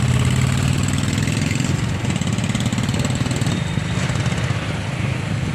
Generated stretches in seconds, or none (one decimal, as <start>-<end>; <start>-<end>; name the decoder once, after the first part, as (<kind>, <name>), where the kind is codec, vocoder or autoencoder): 2.7-4.2 (vocoder, BigVGAN v2)